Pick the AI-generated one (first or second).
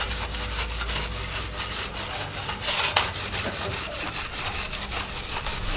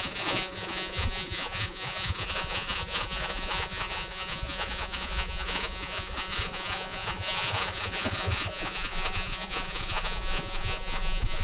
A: second